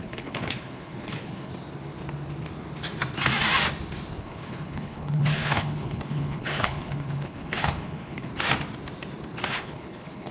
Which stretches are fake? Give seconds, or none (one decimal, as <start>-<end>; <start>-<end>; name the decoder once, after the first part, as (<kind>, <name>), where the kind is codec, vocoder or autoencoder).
0.0-1.5 (codec, HILCodec); 4.2-8.3; 9.5-10.3